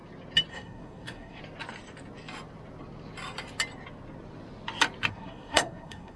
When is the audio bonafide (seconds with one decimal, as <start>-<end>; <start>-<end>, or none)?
0.0-0.5; 1.4-5.1